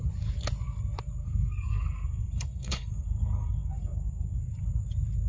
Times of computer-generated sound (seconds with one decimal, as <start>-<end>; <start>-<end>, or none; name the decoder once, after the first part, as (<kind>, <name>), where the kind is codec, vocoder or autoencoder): 1.2-4.4 (codec, SNAC)